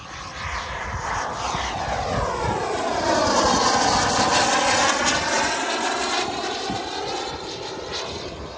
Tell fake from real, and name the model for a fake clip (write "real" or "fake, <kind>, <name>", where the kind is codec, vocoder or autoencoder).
real